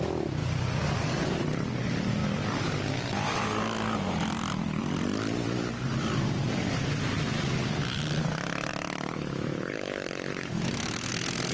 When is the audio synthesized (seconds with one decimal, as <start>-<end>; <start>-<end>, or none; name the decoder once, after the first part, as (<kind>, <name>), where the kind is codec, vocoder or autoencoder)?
8.7-11.1 (autoencoder, DAC-VAE)